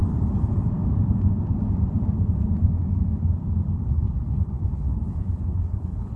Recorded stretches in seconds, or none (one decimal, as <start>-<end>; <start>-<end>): 0.0-3.7